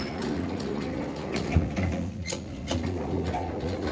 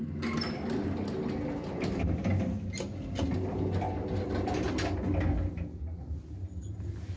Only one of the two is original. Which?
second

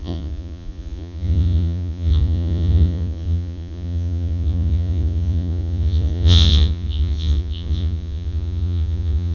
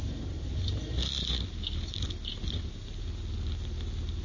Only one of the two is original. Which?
second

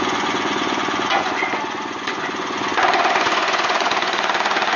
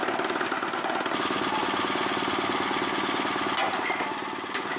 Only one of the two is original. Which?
second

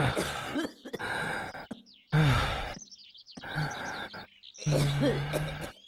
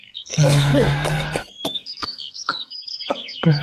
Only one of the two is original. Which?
first